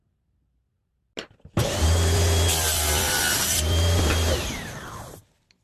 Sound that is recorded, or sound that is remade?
recorded